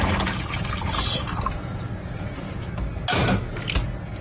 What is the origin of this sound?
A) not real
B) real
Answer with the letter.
B